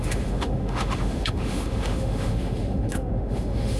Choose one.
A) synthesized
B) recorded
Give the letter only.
A